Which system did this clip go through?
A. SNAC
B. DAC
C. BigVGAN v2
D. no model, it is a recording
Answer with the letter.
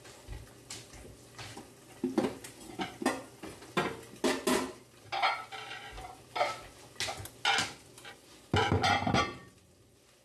D